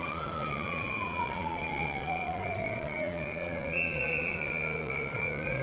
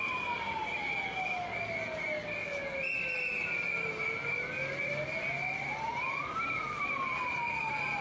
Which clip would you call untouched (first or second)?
second